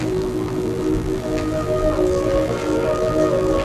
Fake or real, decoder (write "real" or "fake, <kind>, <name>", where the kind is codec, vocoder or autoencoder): fake, vocoder, BigVGAN v2